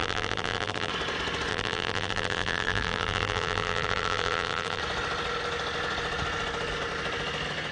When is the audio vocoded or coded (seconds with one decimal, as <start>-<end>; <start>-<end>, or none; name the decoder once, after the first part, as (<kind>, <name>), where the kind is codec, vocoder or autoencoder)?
0.0-0.9 (vocoder, BigVGAN v2); 1.5-4.8